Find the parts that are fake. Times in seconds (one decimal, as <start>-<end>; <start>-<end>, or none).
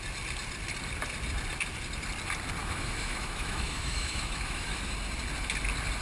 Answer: 2.6-4.9